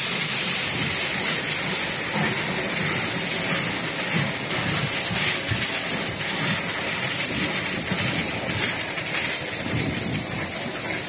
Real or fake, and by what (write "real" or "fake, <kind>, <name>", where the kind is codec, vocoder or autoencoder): real